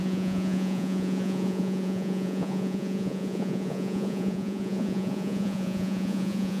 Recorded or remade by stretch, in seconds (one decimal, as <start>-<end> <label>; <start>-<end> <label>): 0.0-6.6 remade